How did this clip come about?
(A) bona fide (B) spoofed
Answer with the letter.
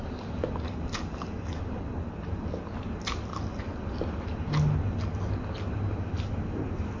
A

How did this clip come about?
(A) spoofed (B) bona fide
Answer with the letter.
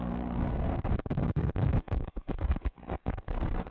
A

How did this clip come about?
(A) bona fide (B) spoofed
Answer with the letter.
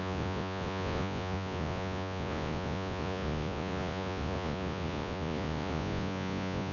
B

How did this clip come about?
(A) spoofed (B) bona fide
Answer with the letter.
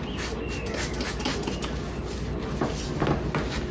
B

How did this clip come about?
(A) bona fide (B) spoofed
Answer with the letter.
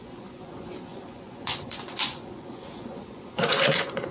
B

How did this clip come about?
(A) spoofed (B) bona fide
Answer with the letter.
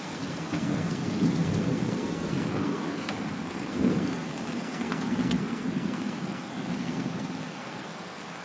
A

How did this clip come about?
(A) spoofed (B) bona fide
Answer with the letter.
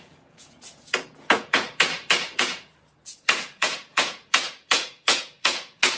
A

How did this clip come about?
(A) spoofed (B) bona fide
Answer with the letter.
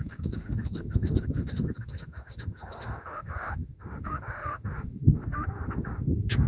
A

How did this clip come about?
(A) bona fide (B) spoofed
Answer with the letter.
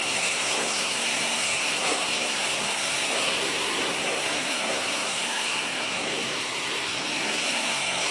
B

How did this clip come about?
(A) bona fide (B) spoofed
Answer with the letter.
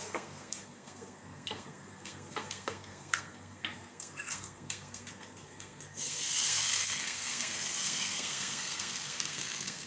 B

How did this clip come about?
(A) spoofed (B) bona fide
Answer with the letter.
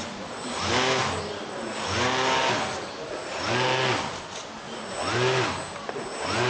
B